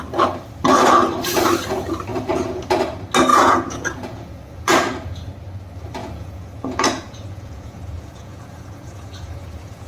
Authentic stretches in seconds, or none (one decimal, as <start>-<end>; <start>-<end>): 0.0-2.1; 2.8-3.3; 5.3-6.0

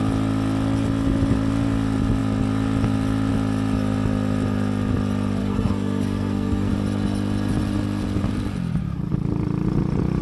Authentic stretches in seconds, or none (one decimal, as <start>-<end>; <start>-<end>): 0.0-5.4; 6.7-10.2

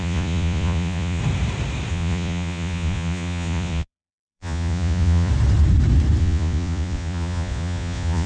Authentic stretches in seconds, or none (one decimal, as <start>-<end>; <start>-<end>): 1.2-1.9; 5.3-6.2

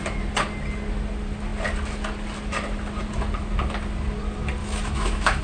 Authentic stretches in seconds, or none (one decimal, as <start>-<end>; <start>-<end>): 0.0-4.6

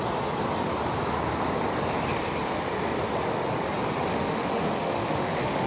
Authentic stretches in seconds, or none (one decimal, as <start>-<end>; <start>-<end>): 0.0-4.1

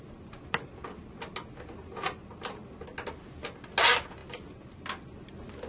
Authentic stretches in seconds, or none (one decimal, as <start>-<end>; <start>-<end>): 0.0-5.7